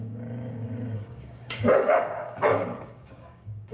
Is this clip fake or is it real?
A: fake